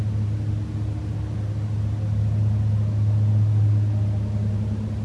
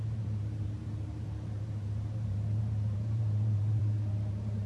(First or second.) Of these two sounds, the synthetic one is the second